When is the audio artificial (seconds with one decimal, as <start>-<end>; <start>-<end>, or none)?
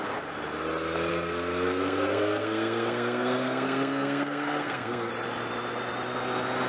1.1-5.1